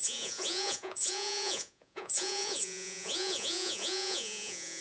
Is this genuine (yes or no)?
no